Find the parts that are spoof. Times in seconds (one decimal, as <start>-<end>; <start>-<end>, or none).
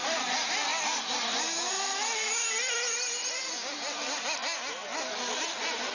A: none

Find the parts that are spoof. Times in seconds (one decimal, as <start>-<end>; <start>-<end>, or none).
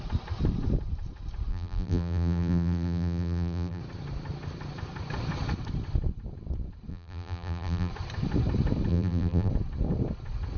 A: 1.5-3.8; 6.9-7.9; 8.9-9.5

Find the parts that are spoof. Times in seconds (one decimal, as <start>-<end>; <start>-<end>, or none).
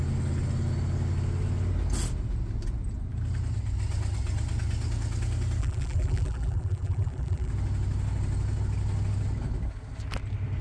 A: 5.6-7.5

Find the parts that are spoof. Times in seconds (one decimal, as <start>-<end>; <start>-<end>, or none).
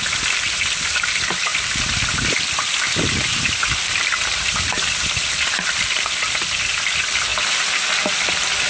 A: 1.5-6.7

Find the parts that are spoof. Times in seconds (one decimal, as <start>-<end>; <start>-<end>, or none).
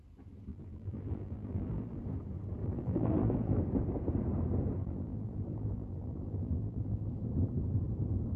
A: 0.5-2.0; 2.6-3.6; 4.8-7.1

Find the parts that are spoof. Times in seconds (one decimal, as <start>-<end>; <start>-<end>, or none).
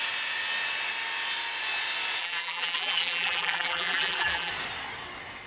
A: 2.2-4.5